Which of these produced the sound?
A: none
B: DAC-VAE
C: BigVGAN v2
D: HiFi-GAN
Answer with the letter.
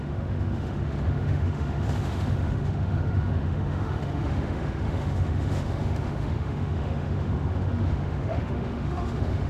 B